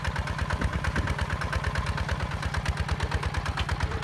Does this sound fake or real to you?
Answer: real